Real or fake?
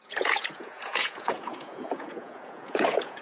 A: fake